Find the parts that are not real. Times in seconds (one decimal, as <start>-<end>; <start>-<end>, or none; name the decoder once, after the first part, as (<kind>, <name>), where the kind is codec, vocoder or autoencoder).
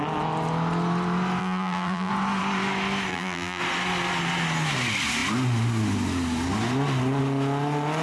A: 1.4-2.1 (vocoder, BigVGAN v2); 3.1-3.6